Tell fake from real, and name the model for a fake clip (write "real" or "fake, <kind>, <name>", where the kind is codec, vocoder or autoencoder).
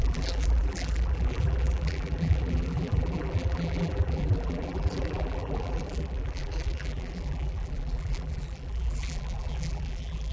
fake, vocoder, BigVGAN v2